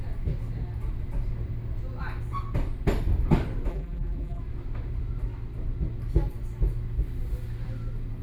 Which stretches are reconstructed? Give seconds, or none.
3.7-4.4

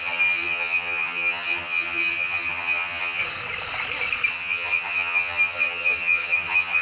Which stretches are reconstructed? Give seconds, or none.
0.0-3.2; 4.3-6.8

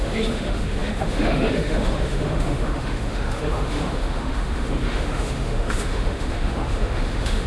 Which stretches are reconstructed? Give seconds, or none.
0.0-7.5

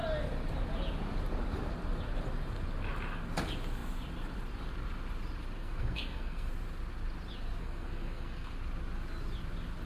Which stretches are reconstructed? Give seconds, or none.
5.6-6.5; 7.6-8.5

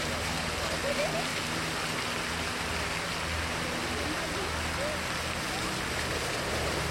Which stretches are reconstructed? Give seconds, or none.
0.0-1.3; 5.4-6.9